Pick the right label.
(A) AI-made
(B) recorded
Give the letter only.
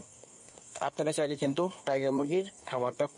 A